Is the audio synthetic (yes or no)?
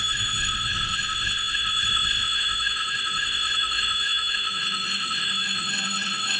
yes